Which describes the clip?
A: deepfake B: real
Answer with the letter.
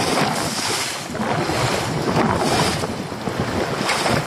B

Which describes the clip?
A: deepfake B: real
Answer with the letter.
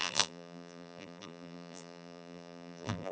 A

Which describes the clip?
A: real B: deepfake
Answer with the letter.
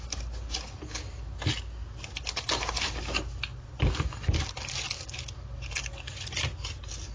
A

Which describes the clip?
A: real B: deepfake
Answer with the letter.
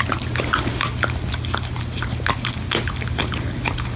A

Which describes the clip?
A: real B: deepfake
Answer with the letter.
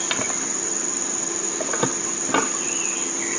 A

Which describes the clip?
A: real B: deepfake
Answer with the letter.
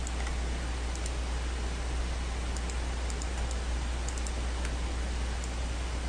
A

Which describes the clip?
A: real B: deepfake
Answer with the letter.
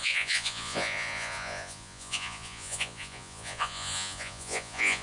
B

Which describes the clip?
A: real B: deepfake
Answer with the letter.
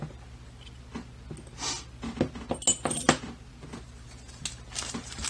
A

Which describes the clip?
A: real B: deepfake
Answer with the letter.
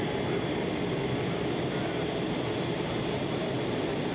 A